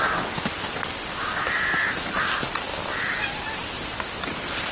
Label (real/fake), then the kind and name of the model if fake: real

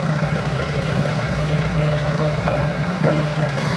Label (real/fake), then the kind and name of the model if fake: fake, codec, SNAC